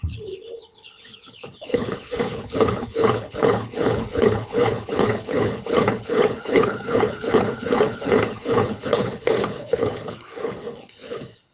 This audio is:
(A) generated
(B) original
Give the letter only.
A